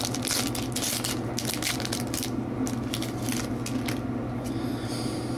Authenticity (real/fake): real